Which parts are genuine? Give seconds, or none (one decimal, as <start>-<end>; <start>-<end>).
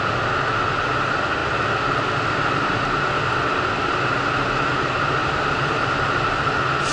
0.0-5.2; 6.0-6.9